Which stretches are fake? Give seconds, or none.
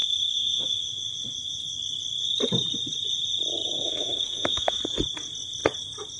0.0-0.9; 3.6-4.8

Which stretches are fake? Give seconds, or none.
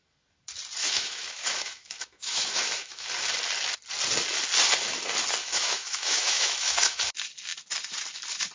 0.8-3.1; 5.4-7.0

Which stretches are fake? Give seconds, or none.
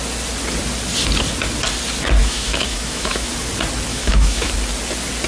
2.2-3.3; 3.9-4.5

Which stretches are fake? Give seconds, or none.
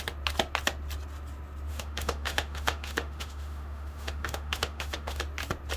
1.7-5.2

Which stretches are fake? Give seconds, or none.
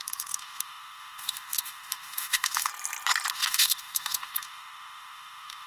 0.0-2.7; 3.3-5.7